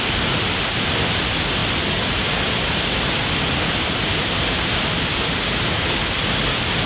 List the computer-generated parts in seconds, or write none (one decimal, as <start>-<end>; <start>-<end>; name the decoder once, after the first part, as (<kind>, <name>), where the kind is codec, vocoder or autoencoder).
none